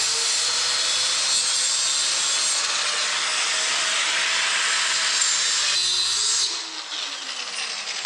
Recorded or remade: recorded